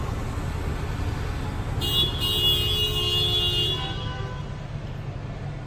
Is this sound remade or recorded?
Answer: recorded